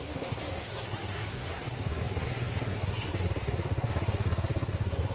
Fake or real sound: fake